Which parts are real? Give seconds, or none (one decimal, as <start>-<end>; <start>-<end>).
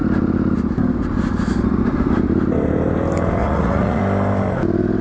0.0-3.4; 4.0-5.0